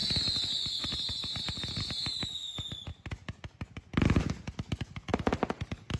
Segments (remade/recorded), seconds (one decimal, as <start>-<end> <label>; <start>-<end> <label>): 0.0-6.0 recorded